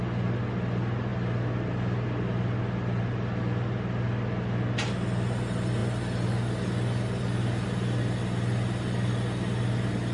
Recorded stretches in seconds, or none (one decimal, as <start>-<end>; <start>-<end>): 0.0-10.1